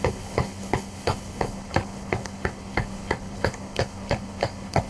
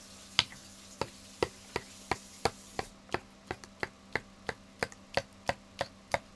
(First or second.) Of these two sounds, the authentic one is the second